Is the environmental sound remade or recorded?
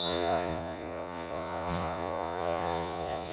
remade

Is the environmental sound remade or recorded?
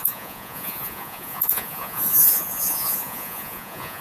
remade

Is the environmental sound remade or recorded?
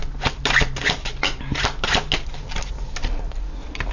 recorded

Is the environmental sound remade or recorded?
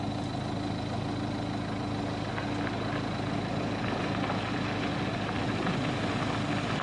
recorded